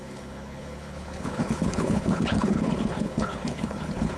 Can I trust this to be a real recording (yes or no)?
no